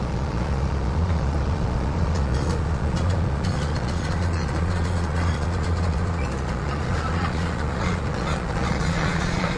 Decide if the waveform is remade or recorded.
remade